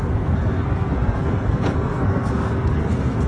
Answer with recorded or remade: remade